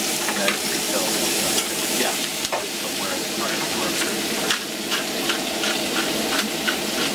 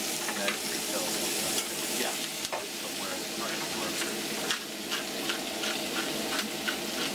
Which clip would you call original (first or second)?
second